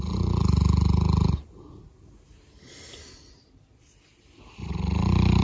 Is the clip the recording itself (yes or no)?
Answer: yes